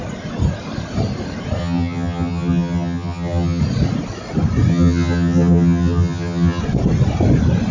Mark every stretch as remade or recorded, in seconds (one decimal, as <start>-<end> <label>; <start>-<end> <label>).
0.0-1.6 recorded; 1.6-3.6 remade; 3.6-4.7 recorded; 4.7-6.6 remade; 6.6-7.7 recorded